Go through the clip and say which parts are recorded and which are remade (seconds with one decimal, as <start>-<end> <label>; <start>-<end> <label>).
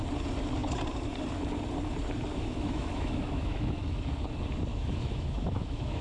0.0-2.3 recorded; 2.3-4.1 remade; 4.1-4.7 recorded; 4.7-6.0 remade